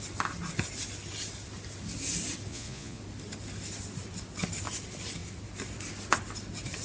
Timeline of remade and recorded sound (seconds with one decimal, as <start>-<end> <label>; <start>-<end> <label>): 0.0-2.5 recorded; 2.5-3.0 remade; 3.0-6.8 recorded